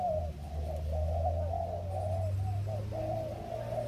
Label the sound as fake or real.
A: real